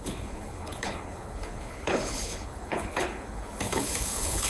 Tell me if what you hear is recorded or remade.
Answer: remade